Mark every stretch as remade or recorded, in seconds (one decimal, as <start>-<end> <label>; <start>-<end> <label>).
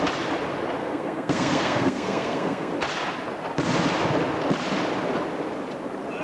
0.0-0.8 recorded; 0.8-2.7 remade; 2.7-6.2 recorded